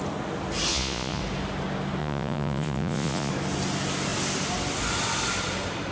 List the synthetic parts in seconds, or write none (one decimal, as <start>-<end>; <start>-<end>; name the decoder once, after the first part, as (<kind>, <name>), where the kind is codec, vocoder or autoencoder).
0.7-1.2 (vocoder, Vocos); 2.0-3.3